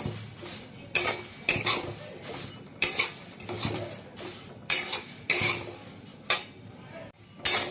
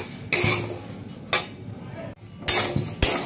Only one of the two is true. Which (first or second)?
second